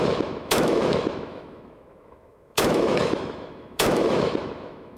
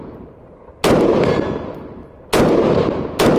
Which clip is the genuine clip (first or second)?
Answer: second